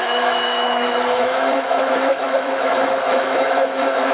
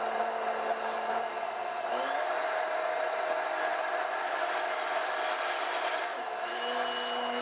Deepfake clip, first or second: first